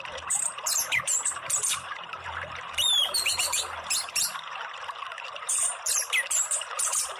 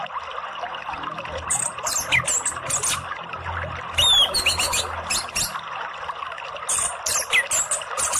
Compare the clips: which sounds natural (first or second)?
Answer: second